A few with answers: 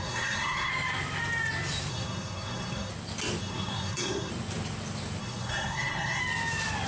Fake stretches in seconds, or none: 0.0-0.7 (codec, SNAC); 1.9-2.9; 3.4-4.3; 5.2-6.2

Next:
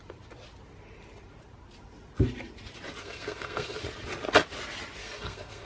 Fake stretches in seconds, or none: 3.0-3.8 (codec, SNAC); 5.0-5.7

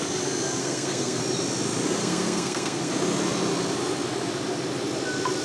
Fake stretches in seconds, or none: 0.6-1.2 (codec, SNAC); 2.0-2.9

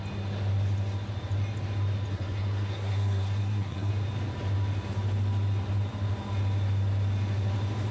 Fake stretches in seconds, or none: 2.1-3.9 (codec, SNAC)

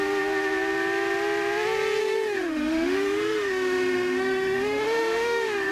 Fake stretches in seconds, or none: 2.0-5.7 (autoencoder, DAC-VAE)

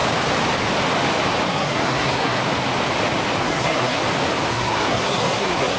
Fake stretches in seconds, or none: 1.5-2.4 (codec, SNAC); 3.4-4.0; 4.5-5.8

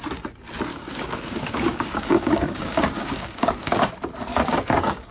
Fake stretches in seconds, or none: 0.7-3.8 (codec, DAC); 4.3-5.1

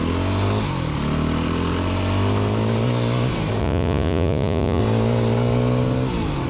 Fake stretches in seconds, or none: 3.6-4.8 (vocoder, Vocos)